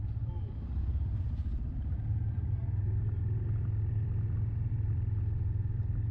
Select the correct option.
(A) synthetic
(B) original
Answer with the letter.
B